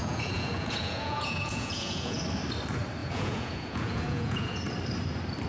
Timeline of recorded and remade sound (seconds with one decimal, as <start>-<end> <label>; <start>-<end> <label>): 0.0-2.2 remade; 2.2-3.0 recorded; 3.0-4.6 remade; 4.6-5.5 recorded